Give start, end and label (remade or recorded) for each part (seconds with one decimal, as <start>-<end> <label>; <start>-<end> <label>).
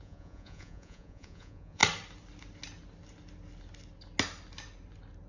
0.0-1.8 remade; 1.8-5.3 recorded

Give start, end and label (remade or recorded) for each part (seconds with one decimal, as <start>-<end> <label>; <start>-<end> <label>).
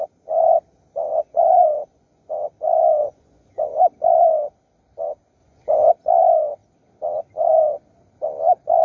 0.0-1.1 recorded; 1.1-2.3 remade; 2.3-3.0 recorded; 3.0-3.8 remade; 3.8-5.4 recorded; 5.4-5.9 remade; 5.9-8.8 recorded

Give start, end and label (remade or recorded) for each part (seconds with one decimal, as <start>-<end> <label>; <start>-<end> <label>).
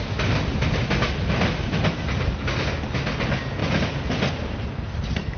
0.0-5.4 recorded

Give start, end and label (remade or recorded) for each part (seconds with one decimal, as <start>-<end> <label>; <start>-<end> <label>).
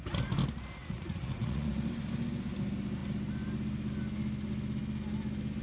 0.0-0.8 recorded; 0.8-1.7 remade; 1.7-5.6 recorded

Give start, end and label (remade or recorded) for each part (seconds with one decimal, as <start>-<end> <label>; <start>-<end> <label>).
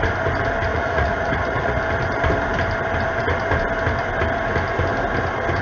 0.0-0.7 recorded; 0.7-1.8 remade; 1.8-5.6 recorded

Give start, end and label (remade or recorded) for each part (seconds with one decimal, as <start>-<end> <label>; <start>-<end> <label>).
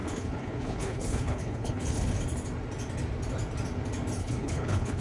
0.0-2.1 remade; 2.1-4.2 recorded; 4.2-5.0 remade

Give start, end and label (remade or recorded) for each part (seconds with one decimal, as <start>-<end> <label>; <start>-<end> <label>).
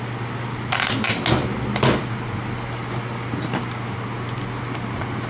0.0-5.3 recorded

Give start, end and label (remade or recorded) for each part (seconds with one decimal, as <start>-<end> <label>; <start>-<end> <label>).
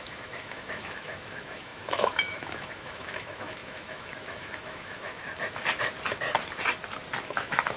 0.0-5.2 remade; 5.2-7.2 recorded; 7.2-7.8 remade